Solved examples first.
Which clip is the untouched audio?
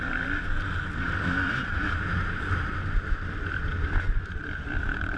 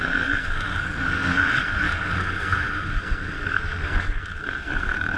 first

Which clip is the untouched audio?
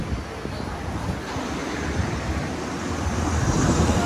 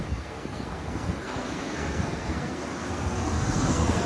first